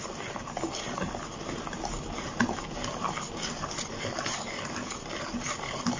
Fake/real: real